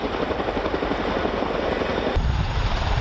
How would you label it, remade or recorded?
recorded